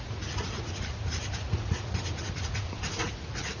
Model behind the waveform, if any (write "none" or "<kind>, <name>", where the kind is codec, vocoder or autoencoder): vocoder, Vocos